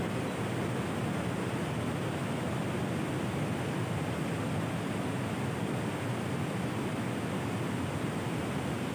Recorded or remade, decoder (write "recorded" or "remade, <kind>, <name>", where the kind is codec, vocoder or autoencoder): recorded